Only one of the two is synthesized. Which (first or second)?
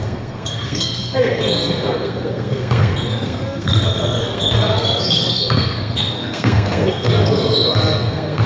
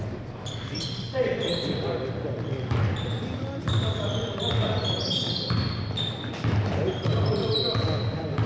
first